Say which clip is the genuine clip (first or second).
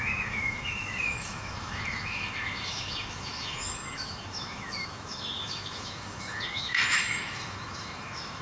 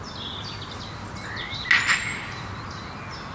second